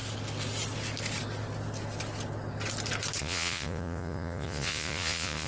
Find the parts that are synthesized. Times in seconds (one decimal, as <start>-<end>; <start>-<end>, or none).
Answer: 3.2-5.5